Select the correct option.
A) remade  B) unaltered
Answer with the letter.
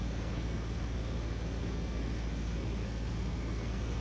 A